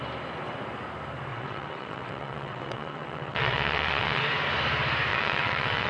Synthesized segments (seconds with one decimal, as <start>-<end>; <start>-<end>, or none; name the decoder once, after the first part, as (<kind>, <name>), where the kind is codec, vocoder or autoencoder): 1.3-4.2 (vocoder, WaveNeXt); 5.1-5.9